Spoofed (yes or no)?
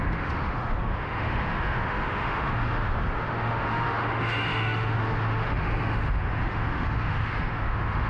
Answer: yes